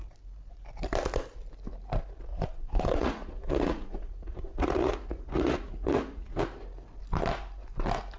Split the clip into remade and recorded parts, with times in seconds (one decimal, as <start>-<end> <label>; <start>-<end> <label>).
0.0-2.3 recorded; 2.3-6.4 remade; 6.4-8.2 recorded